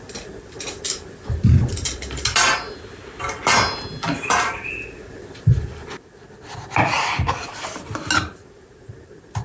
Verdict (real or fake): real